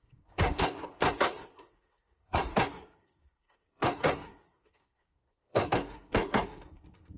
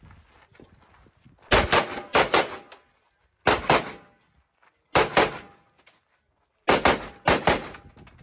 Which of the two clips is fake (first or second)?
first